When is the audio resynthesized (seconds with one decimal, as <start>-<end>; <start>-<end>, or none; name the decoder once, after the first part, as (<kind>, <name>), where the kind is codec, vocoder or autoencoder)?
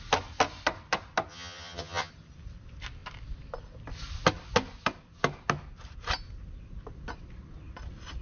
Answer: 1.3-2.1 (vocoder, HiFi-GAN)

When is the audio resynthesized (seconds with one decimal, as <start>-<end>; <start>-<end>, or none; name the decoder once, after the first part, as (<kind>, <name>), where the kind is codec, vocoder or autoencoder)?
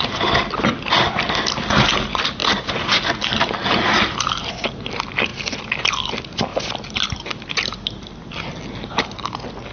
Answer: none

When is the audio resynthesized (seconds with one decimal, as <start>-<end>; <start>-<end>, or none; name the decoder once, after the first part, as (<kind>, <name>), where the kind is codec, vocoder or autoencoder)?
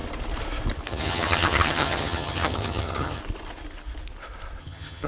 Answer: 0.9-3.2 (vocoder, HiFi-GAN); 4.6-5.1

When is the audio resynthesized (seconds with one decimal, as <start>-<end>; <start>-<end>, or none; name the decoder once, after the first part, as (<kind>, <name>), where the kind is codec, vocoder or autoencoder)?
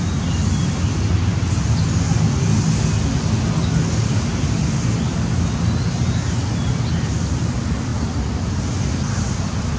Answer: none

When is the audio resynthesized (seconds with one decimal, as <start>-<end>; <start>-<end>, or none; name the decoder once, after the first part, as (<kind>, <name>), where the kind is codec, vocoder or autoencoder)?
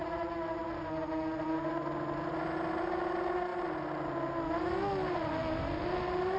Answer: none